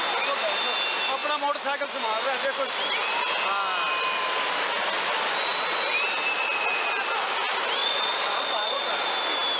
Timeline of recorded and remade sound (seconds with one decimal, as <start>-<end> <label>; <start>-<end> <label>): 0.0-7.8 recorded; 7.8-9.1 remade; 9.1-9.6 recorded